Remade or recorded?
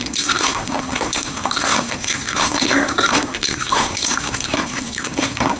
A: remade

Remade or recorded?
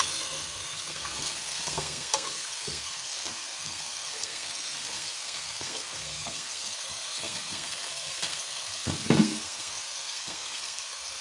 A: remade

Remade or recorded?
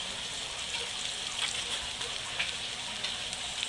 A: recorded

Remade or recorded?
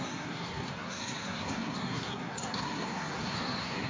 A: remade